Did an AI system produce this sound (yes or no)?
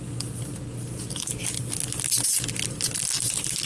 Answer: no